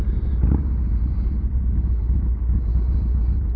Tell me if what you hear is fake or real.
real